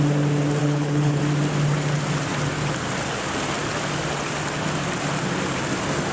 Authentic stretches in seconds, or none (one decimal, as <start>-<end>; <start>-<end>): 0.0-0.6; 1.2-6.1